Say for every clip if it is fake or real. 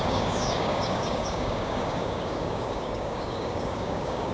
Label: fake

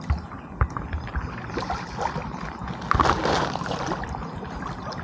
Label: real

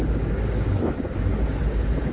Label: fake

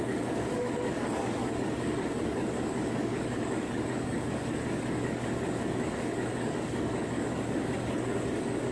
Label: fake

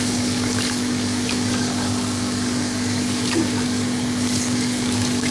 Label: fake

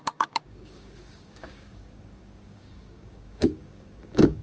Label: fake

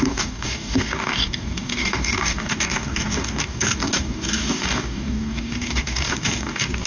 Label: fake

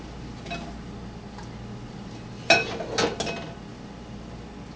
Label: real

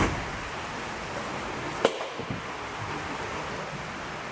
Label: real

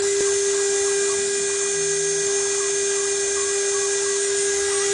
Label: real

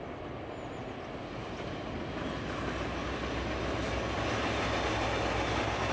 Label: real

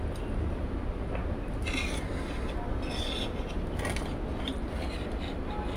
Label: real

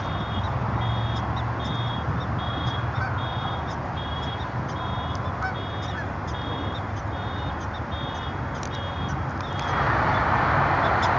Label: real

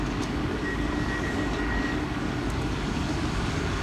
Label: fake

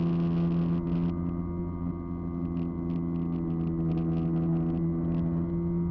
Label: real